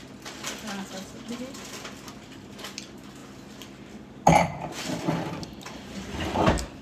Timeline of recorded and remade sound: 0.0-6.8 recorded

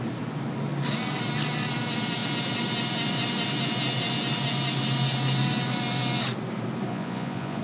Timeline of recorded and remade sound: 0.0-6.9 recorded; 6.9-7.6 remade

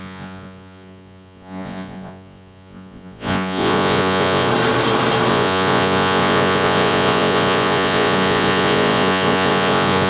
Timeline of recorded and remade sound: 0.0-4.5 remade; 4.5-5.3 recorded; 5.3-10.1 remade